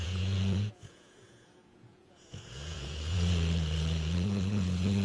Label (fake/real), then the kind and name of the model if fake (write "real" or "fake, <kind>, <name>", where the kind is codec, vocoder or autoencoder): fake, vocoder, Vocos